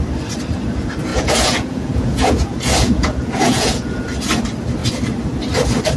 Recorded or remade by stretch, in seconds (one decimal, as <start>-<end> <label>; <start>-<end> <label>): 0.0-1.1 recorded; 1.1-4.0 remade; 4.0-6.0 recorded